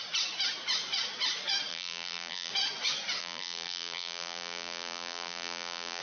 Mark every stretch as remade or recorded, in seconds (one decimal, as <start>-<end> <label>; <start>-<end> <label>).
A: 0.0-1.7 recorded; 1.7-2.5 remade; 2.5-3.2 recorded; 3.2-6.0 remade